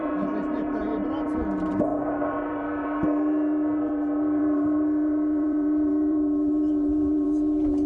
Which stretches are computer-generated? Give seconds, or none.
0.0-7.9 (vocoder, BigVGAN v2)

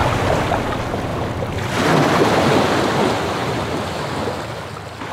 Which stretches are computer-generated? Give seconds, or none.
0.0-0.7 (vocoder, BigVGAN v2); 1.1-1.9; 3.4-4.0